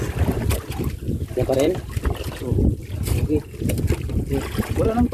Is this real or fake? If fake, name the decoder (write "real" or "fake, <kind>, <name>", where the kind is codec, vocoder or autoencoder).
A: real